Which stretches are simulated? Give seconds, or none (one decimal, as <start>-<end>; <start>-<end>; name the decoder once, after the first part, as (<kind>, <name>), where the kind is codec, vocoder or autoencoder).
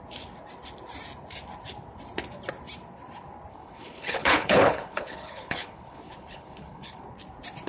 3.5-7.0 (codec, HILCodec)